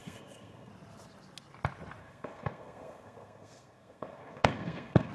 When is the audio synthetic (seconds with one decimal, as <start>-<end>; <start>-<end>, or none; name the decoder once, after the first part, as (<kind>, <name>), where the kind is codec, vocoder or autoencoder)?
0.0-0.7 (codec, SNAC); 2.0-5.1